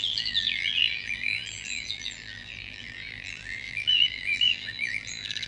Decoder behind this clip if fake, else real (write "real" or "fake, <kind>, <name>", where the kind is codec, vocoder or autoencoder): fake, vocoder, BigVGAN v2